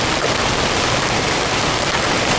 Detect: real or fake real